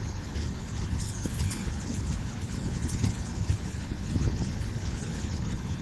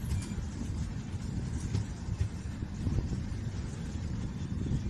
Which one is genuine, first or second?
second